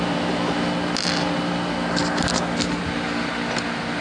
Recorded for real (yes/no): yes